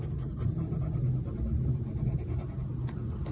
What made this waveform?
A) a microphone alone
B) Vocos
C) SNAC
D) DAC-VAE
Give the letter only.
A